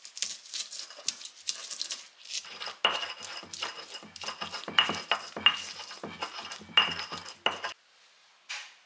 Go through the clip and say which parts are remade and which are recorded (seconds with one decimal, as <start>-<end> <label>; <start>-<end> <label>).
0.0-8.9 recorded